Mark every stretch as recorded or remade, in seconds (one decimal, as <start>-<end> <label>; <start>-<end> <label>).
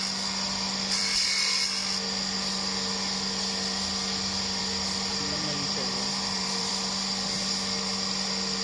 0.0-5.1 recorded; 5.1-6.7 remade; 6.7-8.6 recorded